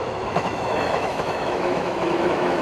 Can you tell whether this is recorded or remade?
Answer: remade